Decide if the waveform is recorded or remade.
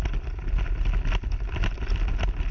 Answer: recorded